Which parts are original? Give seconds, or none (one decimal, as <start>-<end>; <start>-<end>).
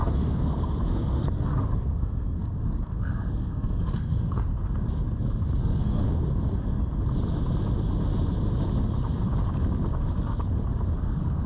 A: 4.5-5.6; 6.0-11.0